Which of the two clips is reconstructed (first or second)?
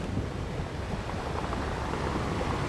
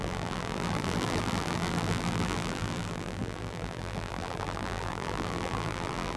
second